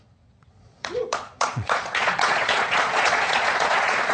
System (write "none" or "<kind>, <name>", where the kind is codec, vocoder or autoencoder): vocoder, Vocos